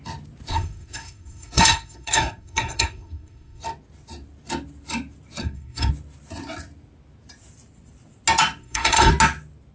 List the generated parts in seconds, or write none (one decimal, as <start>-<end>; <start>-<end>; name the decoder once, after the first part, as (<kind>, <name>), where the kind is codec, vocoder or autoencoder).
0.5-3.6 (codec, SNAC); 5.4-5.9; 8.6-9.1